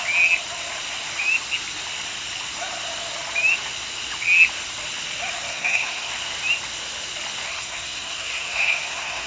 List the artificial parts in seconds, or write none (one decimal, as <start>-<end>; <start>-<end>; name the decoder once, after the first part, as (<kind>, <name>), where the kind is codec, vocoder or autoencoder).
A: 5.5-6.1 (codec, SNAC); 7.5-9.3